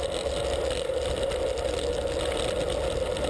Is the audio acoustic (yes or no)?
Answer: yes